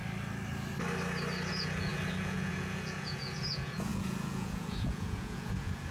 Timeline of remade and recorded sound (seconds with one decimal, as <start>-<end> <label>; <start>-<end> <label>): 0.0-1.5 recorded; 1.5-5.9 remade